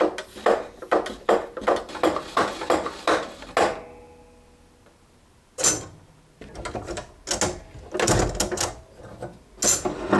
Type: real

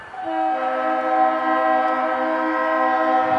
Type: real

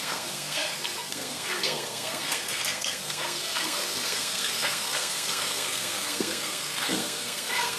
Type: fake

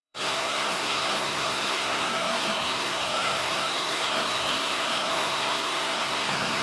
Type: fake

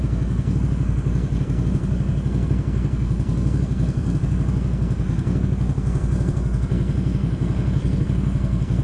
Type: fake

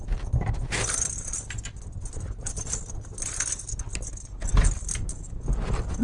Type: real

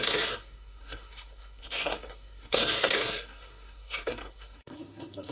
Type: fake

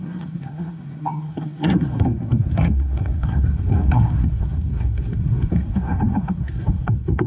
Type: fake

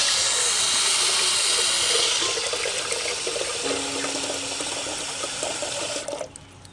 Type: real